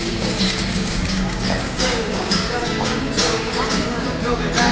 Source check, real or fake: fake